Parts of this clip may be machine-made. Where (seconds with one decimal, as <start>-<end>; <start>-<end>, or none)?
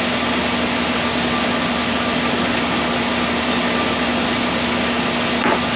none